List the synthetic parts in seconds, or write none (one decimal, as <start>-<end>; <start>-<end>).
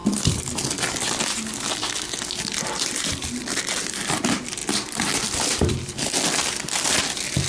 none